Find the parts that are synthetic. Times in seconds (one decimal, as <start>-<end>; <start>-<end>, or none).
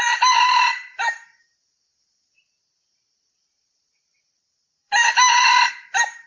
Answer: 0.0-6.3